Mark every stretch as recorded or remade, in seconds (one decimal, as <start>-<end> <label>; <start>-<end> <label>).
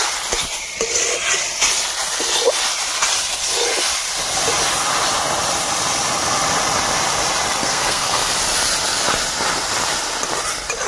0.0-7.6 recorded; 7.6-8.3 remade; 8.3-10.9 recorded